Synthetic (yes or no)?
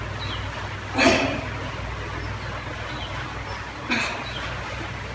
no